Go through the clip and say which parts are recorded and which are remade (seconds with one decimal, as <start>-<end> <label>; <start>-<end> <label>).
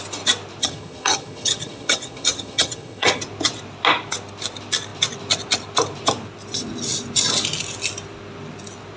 0.0-0.6 recorded; 0.6-3.2 remade; 3.2-9.0 recorded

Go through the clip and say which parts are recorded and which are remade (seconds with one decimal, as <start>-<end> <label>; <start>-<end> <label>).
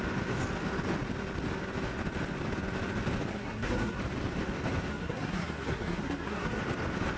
0.0-3.3 recorded; 3.3-4.0 remade; 4.0-4.9 recorded; 4.9-6.6 remade; 6.6-7.2 recorded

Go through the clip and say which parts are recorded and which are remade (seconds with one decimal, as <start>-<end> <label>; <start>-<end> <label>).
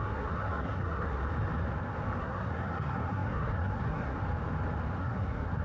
0.0-1.2 remade; 1.2-2.2 recorded; 2.2-4.2 remade; 4.2-5.0 recorded; 5.0-5.6 remade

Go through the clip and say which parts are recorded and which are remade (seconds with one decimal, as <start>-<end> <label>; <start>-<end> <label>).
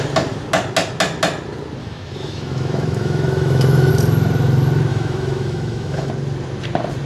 0.0-1.8 recorded; 1.8-3.9 remade; 3.9-4.9 recorded; 4.9-6.1 remade; 6.1-7.1 recorded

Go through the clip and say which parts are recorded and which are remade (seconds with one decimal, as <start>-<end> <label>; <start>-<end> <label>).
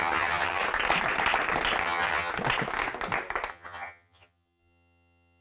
0.0-0.6 remade; 0.6-1.8 recorded; 1.8-2.3 remade; 2.3-3.5 recorded; 3.5-5.4 remade